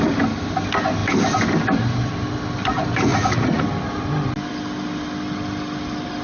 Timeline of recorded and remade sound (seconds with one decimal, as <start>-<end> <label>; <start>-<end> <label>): 0.0-3.1 recorded; 3.1-3.6 remade; 3.6-6.2 recorded